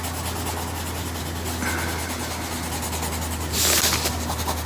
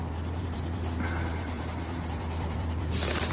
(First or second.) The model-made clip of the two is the second